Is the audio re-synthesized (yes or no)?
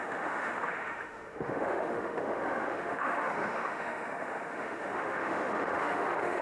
yes